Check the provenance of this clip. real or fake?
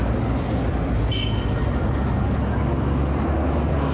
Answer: real